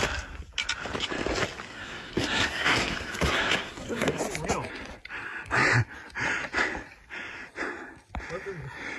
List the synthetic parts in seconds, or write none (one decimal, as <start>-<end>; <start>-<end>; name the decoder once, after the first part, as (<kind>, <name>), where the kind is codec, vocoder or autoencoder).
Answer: 1.7-4.2 (codec, SNAC)